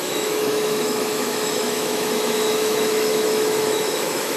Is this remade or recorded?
remade